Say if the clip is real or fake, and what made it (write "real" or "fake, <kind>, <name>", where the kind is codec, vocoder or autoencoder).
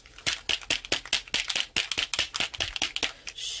real